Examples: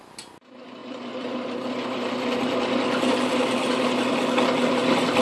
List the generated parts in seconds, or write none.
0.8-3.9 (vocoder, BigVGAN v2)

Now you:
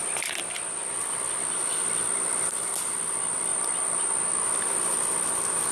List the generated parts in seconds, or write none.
3.5-4.3 (vocoder, BigVGAN v2)

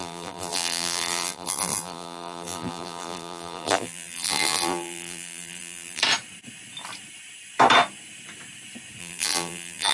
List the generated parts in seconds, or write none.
0.0-6.0 (vocoder, BigVGAN v2); 9.0-9.9